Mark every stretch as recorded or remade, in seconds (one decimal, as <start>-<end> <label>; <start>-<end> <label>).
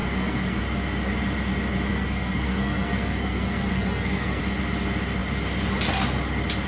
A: 0.0-0.6 remade; 0.6-1.9 recorded; 1.9-4.4 remade; 4.4-6.7 recorded